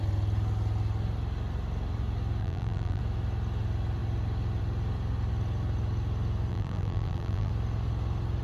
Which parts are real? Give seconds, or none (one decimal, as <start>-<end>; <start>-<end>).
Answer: 0.0-2.4; 3.0-6.5; 7.5-8.4